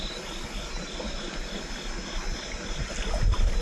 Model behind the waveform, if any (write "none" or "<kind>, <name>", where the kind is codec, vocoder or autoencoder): none